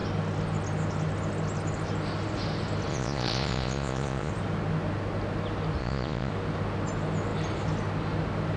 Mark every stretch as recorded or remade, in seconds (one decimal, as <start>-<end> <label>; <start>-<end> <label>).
0.0-2.9 recorded; 2.9-4.3 remade; 4.3-5.8 recorded; 5.8-6.3 remade; 6.3-8.6 recorded